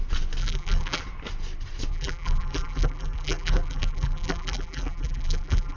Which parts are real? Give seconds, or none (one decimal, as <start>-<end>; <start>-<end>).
0.0-0.4; 1.0-1.9